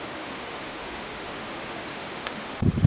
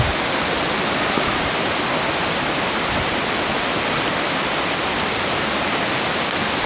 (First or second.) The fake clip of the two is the first